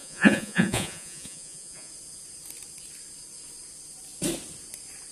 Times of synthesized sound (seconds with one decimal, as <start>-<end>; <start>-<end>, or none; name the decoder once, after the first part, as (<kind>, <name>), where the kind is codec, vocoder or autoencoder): 0.0-1.9 (vocoder, Vocos)